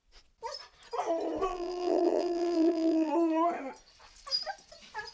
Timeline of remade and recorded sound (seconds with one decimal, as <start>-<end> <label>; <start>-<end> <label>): 0.0-1.5 recorded; 1.5-3.1 remade; 3.1-5.1 recorded